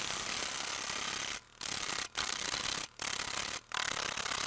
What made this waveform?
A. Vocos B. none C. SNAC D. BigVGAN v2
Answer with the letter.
B